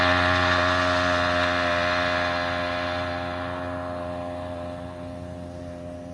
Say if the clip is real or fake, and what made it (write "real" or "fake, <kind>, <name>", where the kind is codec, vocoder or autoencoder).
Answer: real